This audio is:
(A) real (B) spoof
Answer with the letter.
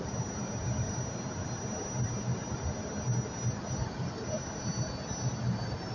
A